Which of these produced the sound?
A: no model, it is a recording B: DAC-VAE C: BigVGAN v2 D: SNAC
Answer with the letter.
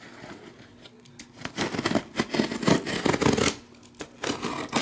A